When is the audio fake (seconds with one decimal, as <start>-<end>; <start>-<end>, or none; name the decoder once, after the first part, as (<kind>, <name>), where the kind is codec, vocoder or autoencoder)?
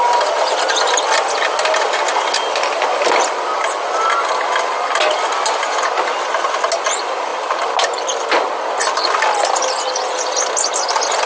none